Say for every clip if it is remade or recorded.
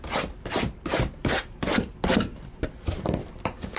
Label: remade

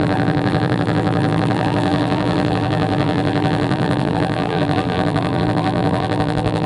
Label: remade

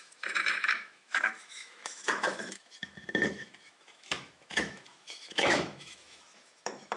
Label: remade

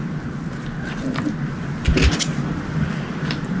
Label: recorded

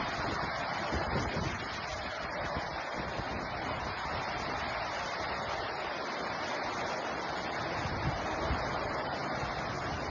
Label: recorded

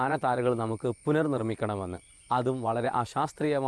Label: remade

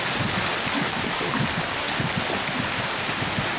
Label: recorded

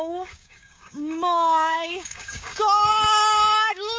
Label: remade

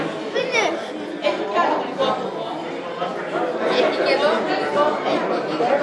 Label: recorded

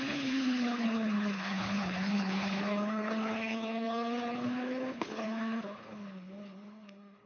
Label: remade